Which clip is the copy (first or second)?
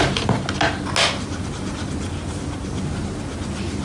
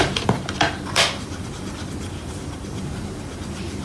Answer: second